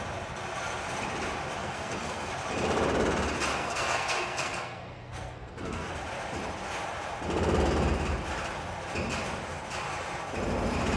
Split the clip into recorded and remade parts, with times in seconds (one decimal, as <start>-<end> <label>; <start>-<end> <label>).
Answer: 0.0-1.6 recorded; 1.6-2.3 remade; 2.3-3.5 recorded; 3.5-6.0 remade; 6.0-11.0 recorded